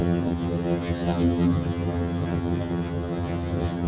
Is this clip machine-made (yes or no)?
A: yes